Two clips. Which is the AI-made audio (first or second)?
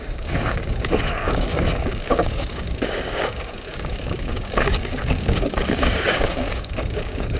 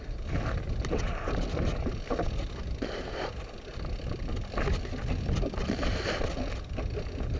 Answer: first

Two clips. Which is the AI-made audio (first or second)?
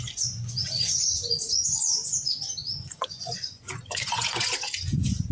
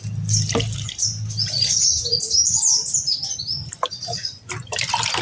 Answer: first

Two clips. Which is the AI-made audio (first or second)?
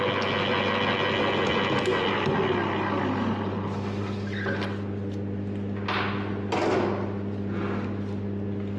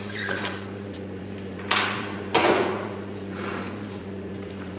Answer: second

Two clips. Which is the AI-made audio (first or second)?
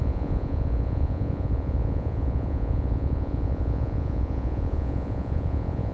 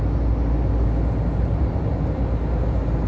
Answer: first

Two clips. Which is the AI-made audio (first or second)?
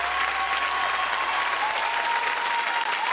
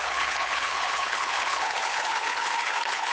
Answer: second